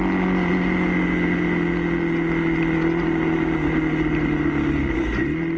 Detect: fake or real real